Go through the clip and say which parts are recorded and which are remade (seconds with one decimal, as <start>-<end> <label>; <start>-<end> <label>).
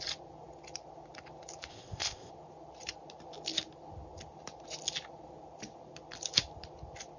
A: 0.0-1.7 recorded; 1.7-2.3 remade; 2.3-7.2 recorded